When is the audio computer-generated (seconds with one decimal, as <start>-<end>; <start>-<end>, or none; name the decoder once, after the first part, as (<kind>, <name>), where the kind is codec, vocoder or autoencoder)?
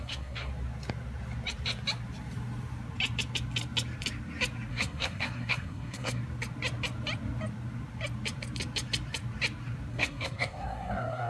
0.0-0.5 (codec, SNAC); 4.7-6.2; 9.9-11.3